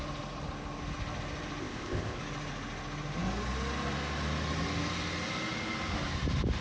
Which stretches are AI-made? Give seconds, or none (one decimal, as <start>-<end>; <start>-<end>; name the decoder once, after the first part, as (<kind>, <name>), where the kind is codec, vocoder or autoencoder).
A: 1.6-2.2 (codec, ZipCodec)